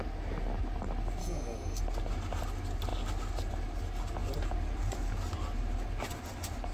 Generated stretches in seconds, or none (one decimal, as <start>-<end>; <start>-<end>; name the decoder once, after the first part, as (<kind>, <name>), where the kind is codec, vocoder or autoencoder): 1.2-1.8 (codec, DAC)

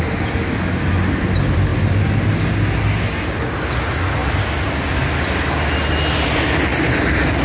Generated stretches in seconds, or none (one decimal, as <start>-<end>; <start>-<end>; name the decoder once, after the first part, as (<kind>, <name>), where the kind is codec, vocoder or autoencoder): none

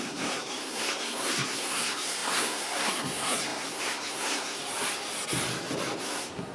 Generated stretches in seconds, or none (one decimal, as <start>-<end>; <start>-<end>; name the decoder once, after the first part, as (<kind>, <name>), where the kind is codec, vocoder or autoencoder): 0.0-4.6 (codec, SNAC); 6.0-6.5

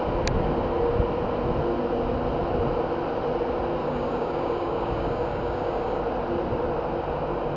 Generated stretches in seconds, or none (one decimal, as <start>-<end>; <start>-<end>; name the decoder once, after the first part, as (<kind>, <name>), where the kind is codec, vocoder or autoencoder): 3.8-6.0 (codec, DAC)

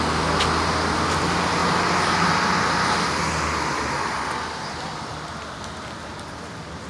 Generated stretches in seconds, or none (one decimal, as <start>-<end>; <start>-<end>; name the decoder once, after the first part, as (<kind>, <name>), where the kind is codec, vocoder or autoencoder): none